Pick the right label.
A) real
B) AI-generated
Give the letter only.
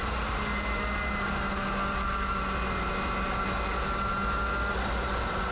A